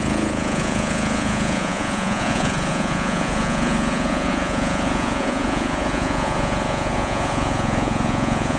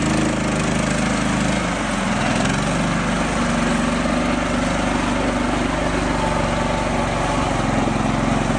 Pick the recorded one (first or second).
second